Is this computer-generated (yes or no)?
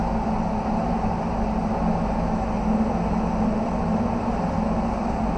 no